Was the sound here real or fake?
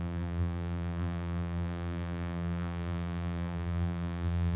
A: fake